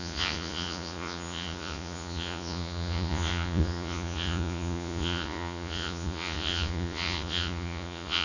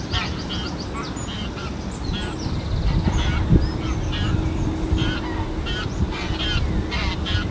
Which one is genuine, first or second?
second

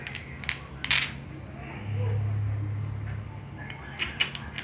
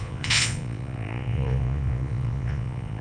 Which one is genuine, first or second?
first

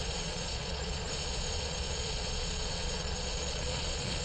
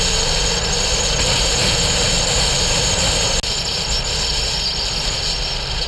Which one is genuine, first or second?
second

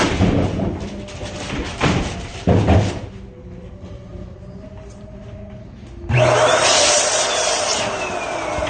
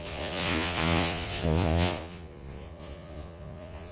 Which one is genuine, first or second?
first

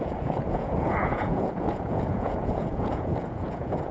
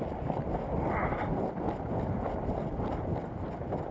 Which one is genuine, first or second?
second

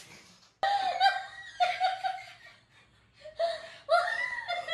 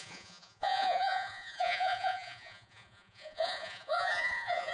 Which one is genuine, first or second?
first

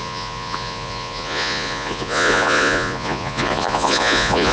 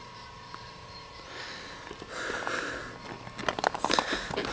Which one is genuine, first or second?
second